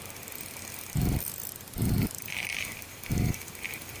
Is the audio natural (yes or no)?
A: yes